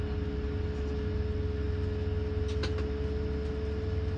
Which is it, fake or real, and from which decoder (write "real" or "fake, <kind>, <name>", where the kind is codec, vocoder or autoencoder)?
real